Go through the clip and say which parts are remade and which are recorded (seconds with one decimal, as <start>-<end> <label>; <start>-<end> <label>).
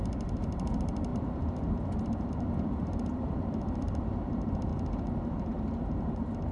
0.0-4.7 remade; 4.7-5.2 recorded; 5.2-6.5 remade